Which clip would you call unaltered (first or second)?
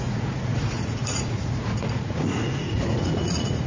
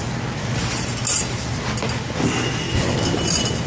second